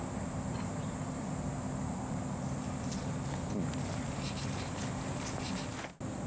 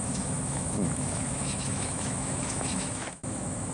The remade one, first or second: second